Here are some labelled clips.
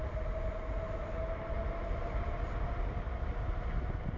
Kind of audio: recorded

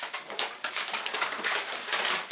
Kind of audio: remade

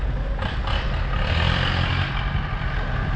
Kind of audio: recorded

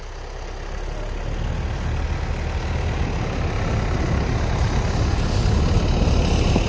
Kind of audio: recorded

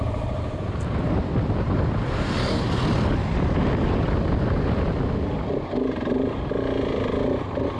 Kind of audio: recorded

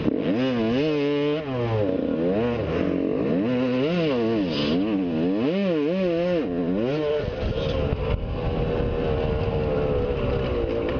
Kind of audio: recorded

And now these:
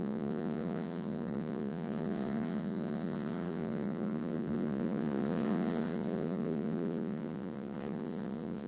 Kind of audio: remade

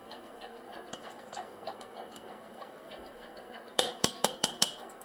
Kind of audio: remade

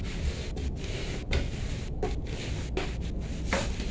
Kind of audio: recorded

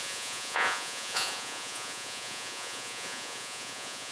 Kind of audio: remade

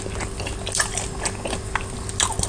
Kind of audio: recorded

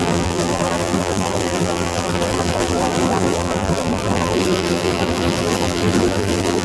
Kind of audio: remade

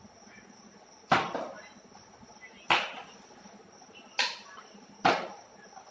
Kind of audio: recorded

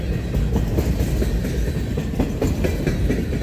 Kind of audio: recorded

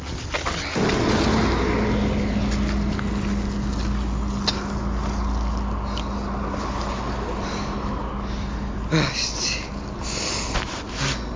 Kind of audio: recorded